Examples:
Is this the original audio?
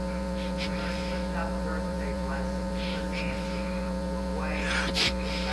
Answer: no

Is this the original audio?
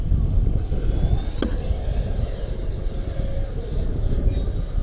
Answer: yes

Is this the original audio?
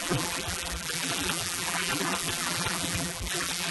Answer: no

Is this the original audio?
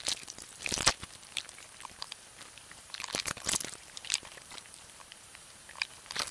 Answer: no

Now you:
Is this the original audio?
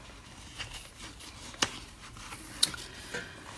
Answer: yes